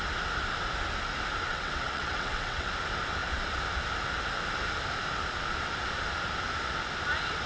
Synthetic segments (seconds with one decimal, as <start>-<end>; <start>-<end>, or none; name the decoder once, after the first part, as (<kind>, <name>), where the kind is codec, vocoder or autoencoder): 1.5-2.7 (vocoder, WaveNeXt)